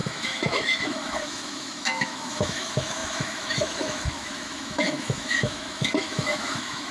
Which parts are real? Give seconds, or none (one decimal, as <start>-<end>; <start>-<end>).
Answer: none